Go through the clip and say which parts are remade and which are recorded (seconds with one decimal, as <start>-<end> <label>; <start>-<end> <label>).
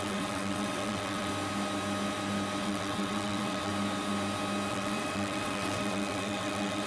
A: 0.0-1.3 remade; 1.3-2.6 recorded; 2.6-3.7 remade; 3.7-4.7 recorded; 4.7-6.9 remade